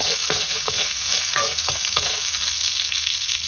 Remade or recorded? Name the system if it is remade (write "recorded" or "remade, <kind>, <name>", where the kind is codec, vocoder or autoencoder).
remade, codec, SNAC